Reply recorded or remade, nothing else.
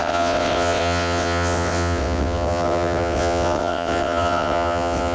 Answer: remade